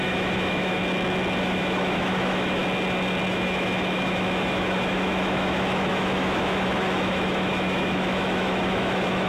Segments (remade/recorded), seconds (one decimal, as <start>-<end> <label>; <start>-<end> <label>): 0.0-0.8 remade; 0.8-1.4 recorded; 1.4-2.6 remade; 2.6-3.3 recorded; 3.3-9.3 remade